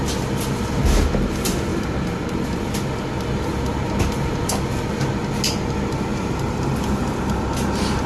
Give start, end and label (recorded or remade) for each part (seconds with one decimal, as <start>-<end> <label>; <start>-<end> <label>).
0.0-6.1 recorded; 6.1-6.7 remade; 6.7-8.1 recorded